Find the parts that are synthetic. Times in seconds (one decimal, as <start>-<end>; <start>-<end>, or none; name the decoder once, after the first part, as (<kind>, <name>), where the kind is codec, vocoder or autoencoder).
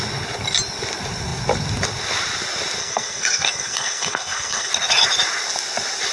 2.8-4.7 (codec, SNAC)